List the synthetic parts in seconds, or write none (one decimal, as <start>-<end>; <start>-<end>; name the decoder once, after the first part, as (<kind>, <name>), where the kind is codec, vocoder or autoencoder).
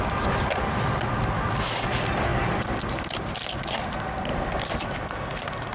2.3-3.3 (vocoder, BigVGAN v2); 4.3-4.8